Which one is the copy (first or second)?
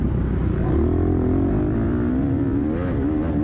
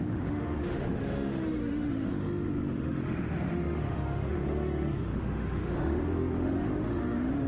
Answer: second